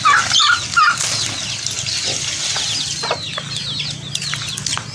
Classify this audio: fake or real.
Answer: real